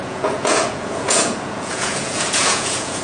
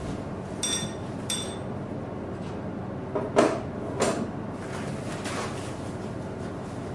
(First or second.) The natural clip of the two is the second